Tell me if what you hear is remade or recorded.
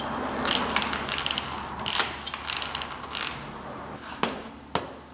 recorded